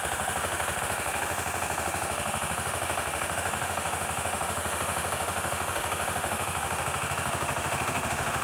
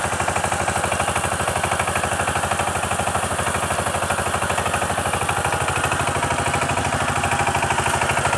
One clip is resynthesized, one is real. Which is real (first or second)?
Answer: second